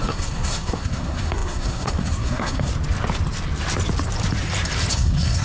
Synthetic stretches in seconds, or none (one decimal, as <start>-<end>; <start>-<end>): 0.0-2.7; 4.9-5.4